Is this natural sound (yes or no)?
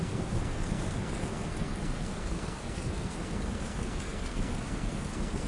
no